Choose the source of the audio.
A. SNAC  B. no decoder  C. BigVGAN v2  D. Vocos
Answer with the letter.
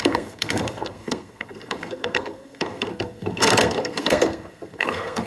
A